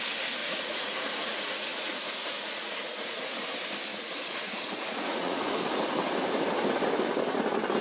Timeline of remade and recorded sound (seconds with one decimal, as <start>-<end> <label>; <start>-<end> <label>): 0.0-0.4 recorded; 0.4-3.4 remade; 3.4-3.9 recorded; 3.9-5.4 remade; 5.4-7.8 recorded